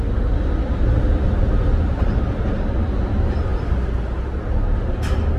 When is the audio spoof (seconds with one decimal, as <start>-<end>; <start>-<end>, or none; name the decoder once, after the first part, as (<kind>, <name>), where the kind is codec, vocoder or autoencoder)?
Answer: none